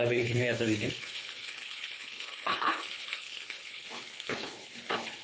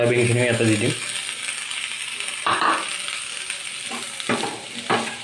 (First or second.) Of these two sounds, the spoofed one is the first